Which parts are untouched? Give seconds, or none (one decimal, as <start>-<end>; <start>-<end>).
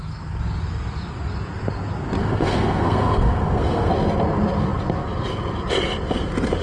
0.0-2.2; 3.9-6.6